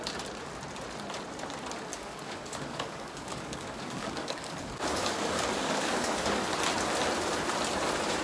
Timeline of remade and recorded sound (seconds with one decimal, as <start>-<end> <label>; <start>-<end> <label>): 0.0-1.9 recorded; 1.9-6.4 remade; 6.4-8.2 recorded